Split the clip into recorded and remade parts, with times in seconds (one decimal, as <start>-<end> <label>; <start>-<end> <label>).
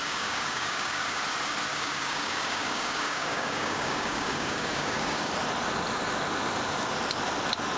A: 0.0-1.2 remade; 1.2-1.7 recorded; 1.7-5.3 remade; 5.3-7.8 recorded